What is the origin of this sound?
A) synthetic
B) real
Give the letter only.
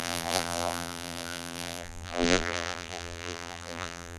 A